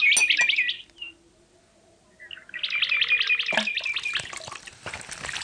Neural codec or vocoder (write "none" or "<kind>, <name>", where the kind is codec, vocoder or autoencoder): none